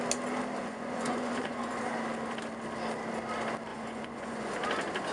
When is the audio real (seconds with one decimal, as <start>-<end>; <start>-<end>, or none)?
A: 0.0-0.6; 1.8-3.7; 4.5-5.1